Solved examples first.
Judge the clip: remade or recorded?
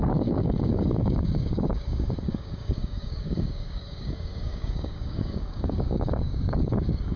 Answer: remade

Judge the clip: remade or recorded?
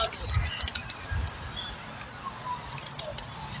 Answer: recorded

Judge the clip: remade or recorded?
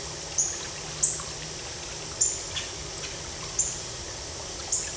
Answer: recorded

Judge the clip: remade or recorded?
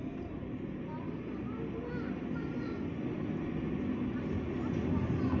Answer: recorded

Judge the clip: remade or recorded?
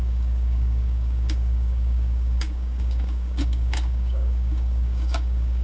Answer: remade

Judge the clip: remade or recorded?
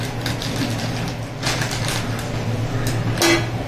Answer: recorded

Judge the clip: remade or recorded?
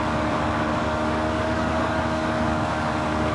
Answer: remade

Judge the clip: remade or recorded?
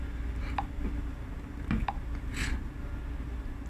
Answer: recorded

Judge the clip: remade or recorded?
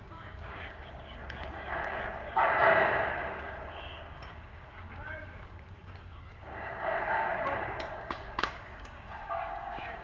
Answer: remade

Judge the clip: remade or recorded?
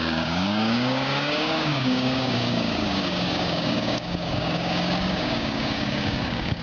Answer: remade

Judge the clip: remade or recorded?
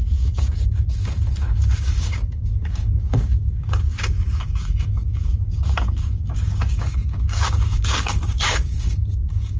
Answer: remade